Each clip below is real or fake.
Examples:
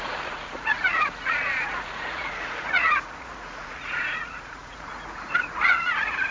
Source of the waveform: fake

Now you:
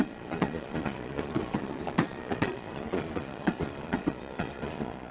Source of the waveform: fake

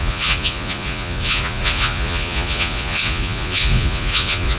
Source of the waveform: fake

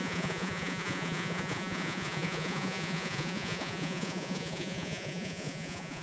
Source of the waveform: fake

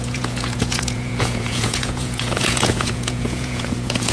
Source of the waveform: fake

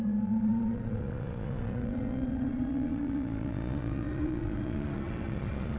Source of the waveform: fake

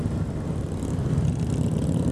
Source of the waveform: real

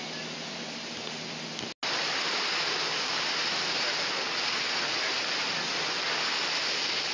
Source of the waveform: real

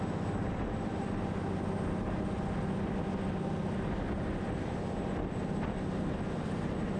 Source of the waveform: real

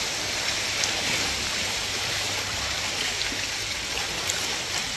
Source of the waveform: real